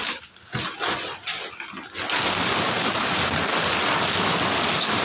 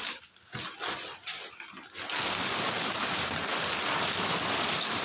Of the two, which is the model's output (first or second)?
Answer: second